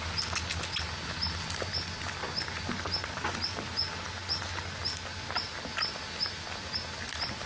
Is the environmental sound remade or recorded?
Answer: recorded